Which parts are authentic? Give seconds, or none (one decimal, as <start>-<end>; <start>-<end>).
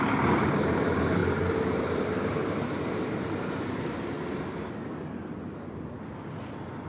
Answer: 0.0-6.9